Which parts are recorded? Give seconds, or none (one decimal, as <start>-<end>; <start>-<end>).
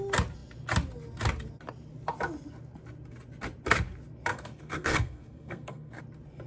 0.0-4.3; 6.0-6.5